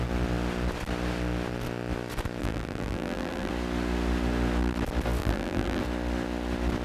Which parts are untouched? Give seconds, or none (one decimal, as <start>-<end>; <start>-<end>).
0.0-2.4; 3.5-5.2; 5.8-6.8